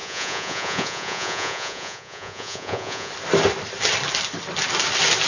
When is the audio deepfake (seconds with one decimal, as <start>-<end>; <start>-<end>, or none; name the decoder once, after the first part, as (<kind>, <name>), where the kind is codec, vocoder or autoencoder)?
0.0-3.1 (vocoder, Vocos)